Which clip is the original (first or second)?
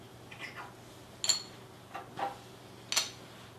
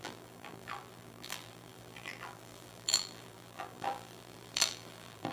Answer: first